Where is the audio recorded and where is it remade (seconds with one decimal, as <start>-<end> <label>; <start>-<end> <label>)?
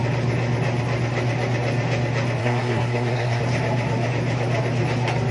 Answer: 0.0-2.4 recorded; 2.4-3.4 remade; 3.4-5.3 recorded